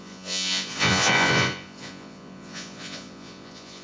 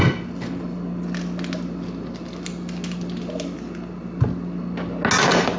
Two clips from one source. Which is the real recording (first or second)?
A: second